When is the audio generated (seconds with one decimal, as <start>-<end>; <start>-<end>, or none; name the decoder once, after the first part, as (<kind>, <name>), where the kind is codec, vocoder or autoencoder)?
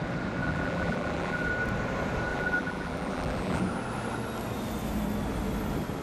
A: 0.4-1.5 (vocoder, BigVGAN v2); 2.3-3.6